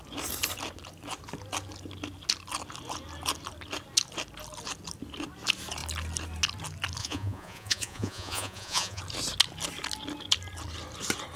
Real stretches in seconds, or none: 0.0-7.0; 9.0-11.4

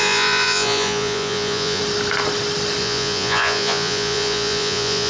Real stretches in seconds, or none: 1.8-2.8

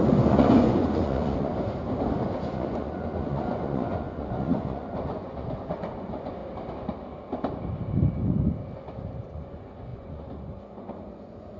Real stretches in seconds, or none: 1.5-2.4; 6.4-9.2

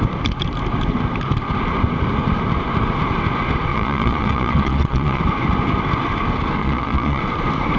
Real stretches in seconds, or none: 0.0-3.7; 5.2-6.6; 7.2-7.8